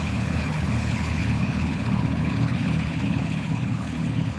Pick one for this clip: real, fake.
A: fake